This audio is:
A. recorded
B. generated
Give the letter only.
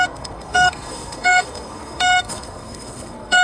B